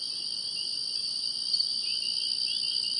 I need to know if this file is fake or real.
real